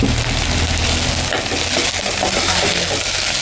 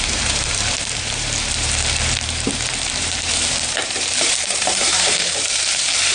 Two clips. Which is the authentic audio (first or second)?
first